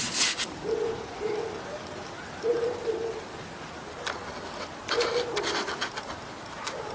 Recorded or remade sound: recorded